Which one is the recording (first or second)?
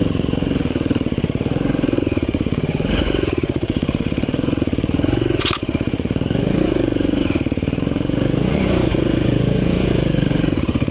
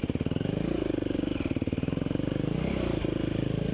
second